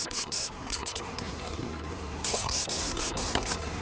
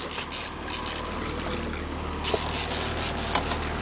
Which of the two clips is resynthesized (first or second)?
first